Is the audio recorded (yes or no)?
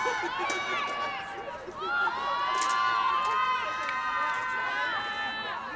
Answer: yes